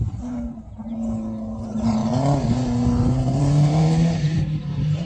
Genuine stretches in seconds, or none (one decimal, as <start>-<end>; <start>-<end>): 0.9-1.6; 2.0-3.4